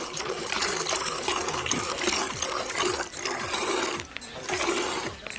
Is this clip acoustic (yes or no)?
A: yes